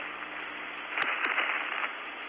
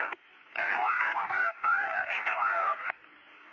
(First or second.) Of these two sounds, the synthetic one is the second